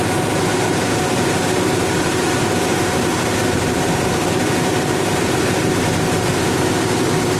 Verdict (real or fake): fake